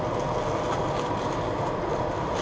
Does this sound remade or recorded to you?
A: recorded